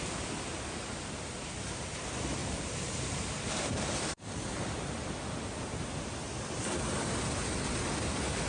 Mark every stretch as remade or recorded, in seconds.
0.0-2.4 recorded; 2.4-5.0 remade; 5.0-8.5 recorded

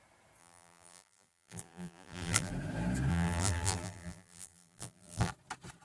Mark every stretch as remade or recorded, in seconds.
0.0-0.4 recorded; 0.4-2.5 remade; 2.5-3.1 recorded; 3.1-5.3 remade; 5.3-5.8 recorded

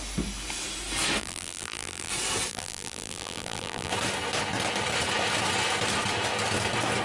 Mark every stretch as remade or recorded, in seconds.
0.0-1.2 recorded; 1.2-2.1 remade; 2.1-2.5 recorded; 2.5-3.9 remade; 3.9-7.0 recorded

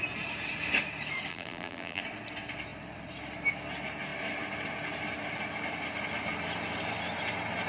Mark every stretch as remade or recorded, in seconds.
0.0-1.3 recorded; 1.3-2.0 remade; 2.0-7.7 recorded

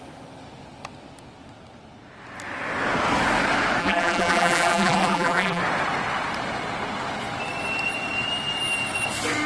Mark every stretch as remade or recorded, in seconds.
0.0-3.8 recorded; 3.8-5.6 remade; 5.6-9.5 recorded

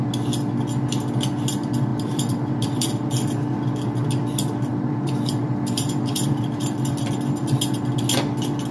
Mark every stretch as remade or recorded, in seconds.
0.0-1.9 recorded; 1.9-2.9 remade; 2.9-4.7 recorded; 4.7-7.1 remade; 7.1-8.7 recorded

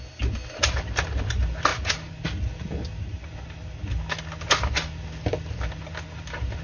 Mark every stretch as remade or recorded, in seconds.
0.0-6.6 recorded